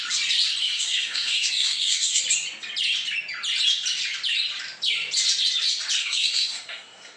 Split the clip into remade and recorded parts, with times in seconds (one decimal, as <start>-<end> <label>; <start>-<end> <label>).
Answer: 0.0-0.6 recorded; 0.6-2.2 remade; 2.2-6.0 recorded; 6.0-7.2 remade